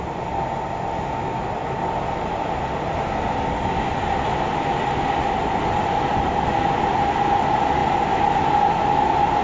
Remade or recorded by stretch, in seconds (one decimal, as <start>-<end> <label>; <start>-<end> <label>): 0.0-9.4 recorded